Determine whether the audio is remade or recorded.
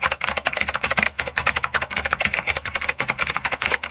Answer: remade